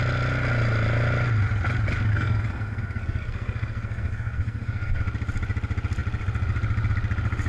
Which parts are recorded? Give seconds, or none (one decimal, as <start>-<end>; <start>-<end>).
0.0-2.1; 5.0-7.5